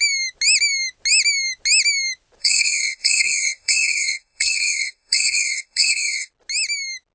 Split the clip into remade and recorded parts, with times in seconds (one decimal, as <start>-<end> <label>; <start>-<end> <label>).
0.0-2.4 recorded; 2.4-6.3 remade; 6.3-7.1 recorded